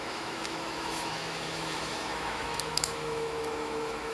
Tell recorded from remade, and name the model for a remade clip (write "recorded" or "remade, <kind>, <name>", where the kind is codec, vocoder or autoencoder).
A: remade, autoencoder, DAC-VAE